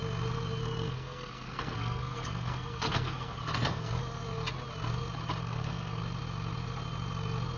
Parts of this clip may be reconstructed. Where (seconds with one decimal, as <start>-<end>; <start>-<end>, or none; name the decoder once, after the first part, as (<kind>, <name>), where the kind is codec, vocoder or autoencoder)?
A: 0.6-4.0 (codec, SNAC); 5.4-6.0